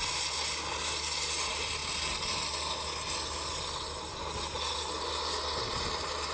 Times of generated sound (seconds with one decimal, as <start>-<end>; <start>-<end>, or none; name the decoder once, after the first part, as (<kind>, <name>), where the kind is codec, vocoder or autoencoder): none